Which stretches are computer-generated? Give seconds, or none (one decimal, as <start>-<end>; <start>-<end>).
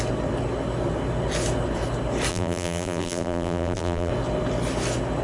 2.3-4.1